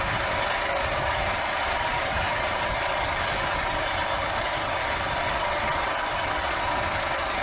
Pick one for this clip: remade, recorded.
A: recorded